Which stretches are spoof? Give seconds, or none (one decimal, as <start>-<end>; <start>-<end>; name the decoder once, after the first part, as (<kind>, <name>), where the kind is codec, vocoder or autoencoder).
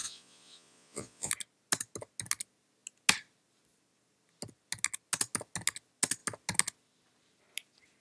0.0-1.3 (vocoder, Vocos)